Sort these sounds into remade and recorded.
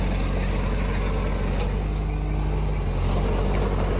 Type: recorded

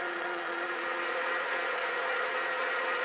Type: remade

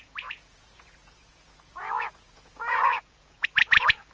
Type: remade